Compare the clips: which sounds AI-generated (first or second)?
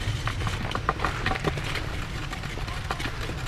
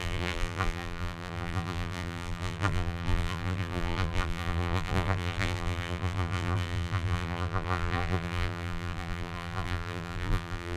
second